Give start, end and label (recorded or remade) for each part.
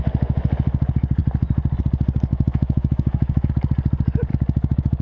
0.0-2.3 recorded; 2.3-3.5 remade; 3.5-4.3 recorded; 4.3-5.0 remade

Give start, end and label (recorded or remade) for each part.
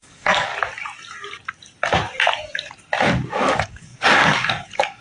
0.0-0.5 remade; 0.5-3.3 recorded; 3.3-5.0 remade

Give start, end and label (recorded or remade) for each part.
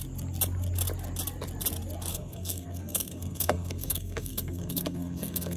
0.0-2.1 recorded; 2.1-5.6 remade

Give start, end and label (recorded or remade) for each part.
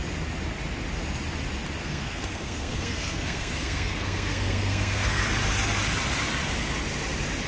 0.0-1.8 recorded; 1.8-5.2 remade; 5.2-7.5 recorded